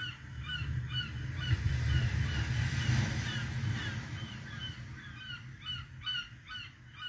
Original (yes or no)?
yes